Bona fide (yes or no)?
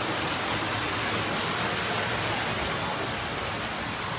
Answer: yes